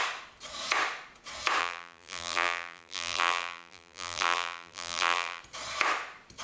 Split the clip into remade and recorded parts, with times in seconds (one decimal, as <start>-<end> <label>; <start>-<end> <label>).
0.0-1.6 recorded; 1.6-5.4 remade; 5.4-6.4 recorded